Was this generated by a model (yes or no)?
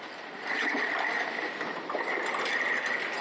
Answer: no